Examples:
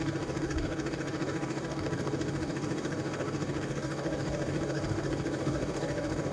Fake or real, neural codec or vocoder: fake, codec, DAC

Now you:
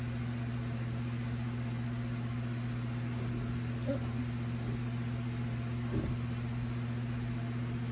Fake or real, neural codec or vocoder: real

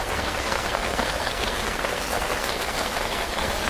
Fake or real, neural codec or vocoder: fake, codec, SNAC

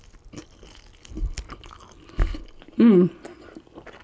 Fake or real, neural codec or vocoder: real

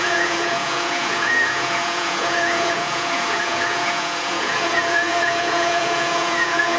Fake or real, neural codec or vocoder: fake, vocoder, Vocos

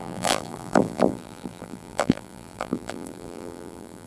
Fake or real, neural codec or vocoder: fake, vocoder, BigVGAN v2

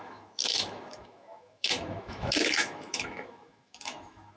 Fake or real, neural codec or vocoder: fake, autoencoder, DAC-VAE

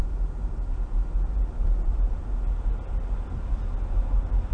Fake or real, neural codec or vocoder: real